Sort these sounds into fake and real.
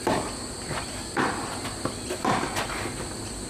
real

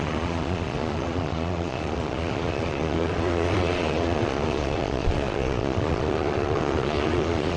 fake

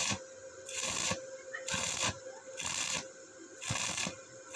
fake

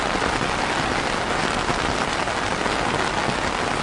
real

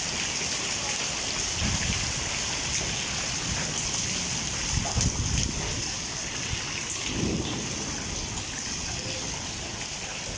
real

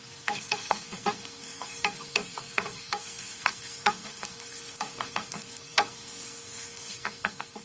fake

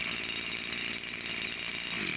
real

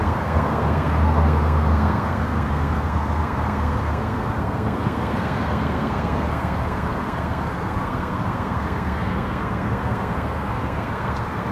fake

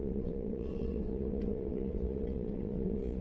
fake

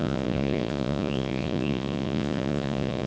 fake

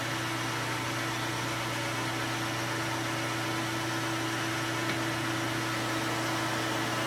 real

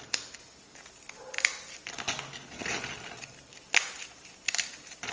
real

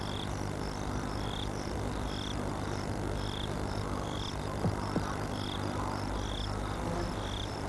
real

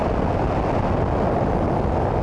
real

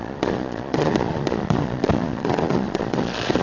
fake